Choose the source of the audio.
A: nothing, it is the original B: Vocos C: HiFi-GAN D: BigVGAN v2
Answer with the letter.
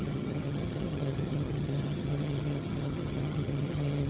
C